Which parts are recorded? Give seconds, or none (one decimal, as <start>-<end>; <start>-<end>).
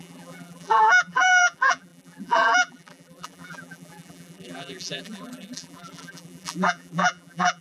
none